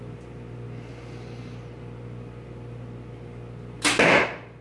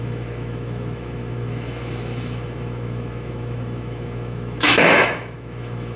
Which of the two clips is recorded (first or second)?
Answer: first